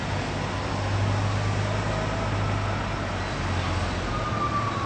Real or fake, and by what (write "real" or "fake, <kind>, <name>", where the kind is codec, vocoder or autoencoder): real